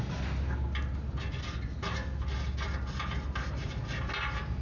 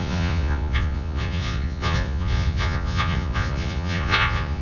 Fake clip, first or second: second